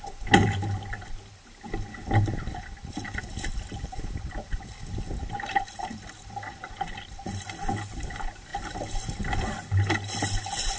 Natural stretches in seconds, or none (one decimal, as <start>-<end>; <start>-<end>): 0.0-10.8